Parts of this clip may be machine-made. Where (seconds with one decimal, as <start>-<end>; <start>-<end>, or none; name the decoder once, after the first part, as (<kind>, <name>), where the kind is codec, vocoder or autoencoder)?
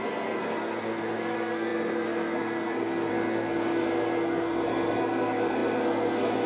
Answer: 0.0-6.5 (codec, SNAC)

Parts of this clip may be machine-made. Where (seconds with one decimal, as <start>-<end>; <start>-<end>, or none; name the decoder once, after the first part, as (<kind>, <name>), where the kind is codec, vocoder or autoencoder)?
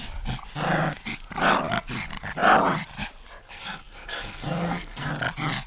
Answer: 3.4-5.1 (codec, SNAC)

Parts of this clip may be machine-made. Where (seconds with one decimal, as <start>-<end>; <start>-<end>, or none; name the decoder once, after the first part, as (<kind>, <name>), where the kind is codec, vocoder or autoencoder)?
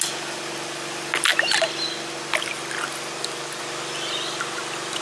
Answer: none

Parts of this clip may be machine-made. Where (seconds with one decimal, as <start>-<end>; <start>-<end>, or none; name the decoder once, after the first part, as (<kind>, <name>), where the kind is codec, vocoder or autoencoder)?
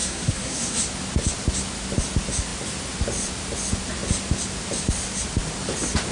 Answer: 0.0-0.8 (codec, SNAC)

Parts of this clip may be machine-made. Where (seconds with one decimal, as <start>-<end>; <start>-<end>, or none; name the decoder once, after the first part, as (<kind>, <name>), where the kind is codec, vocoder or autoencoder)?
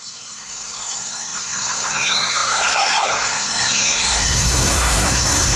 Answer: 0.0-5.6 (codec, SNAC)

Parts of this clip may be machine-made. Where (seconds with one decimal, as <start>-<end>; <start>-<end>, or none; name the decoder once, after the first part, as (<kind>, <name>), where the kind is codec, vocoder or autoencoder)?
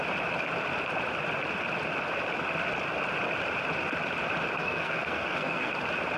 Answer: 4.6-5.7 (codec, SNAC)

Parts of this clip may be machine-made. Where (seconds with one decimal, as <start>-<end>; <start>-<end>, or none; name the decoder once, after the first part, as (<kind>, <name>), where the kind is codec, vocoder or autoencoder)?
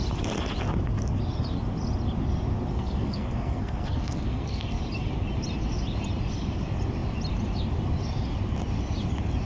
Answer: 2.7-4.8 (codec, SNAC)